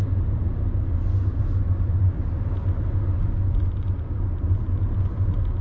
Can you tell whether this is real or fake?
real